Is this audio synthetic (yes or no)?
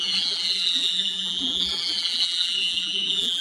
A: yes